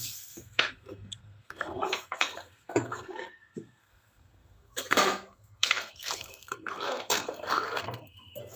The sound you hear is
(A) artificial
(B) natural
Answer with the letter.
A